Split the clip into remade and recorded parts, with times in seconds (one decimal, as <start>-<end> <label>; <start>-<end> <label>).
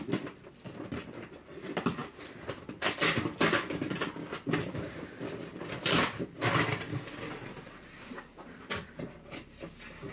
0.0-10.1 recorded